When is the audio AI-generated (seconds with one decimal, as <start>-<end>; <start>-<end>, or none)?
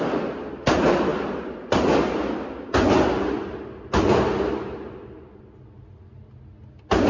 none